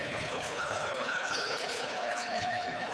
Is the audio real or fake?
fake